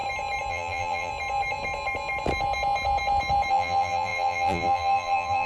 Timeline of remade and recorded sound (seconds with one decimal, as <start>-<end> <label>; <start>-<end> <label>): 0.0-0.5 recorded; 0.5-1.1 remade; 1.1-3.5 recorded; 3.5-5.5 remade